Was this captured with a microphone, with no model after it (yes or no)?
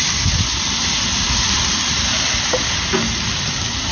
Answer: yes